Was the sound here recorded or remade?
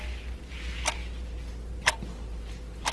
recorded